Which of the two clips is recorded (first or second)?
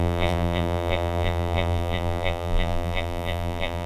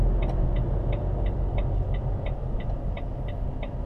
second